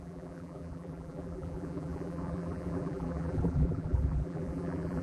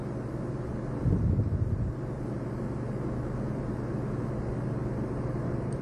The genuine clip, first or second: second